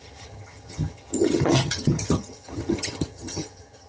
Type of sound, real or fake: fake